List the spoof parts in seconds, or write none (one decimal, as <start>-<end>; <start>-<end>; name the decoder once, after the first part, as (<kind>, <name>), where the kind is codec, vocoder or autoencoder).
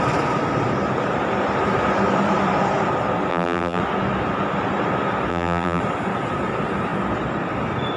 3.3-3.8 (vocoder, BigVGAN v2); 5.3-5.8